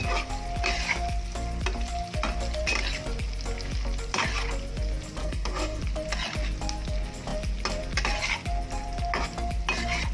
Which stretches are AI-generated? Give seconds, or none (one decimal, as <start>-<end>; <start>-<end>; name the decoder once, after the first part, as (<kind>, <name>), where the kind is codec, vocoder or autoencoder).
5.2-5.8 (codec, SNAC)